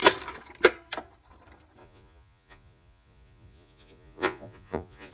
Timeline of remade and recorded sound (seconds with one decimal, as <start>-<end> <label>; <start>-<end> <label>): 0.0-1.8 recorded; 1.8-5.1 remade